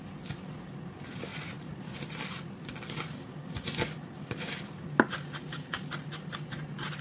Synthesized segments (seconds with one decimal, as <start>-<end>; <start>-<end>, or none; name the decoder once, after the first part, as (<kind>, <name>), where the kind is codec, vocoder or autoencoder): none